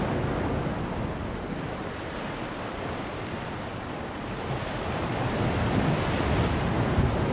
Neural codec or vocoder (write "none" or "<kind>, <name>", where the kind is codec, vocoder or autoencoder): none